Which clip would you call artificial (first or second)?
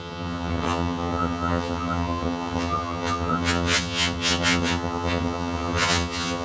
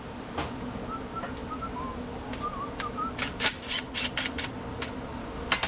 first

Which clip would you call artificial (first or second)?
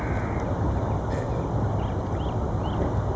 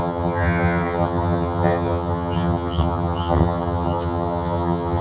second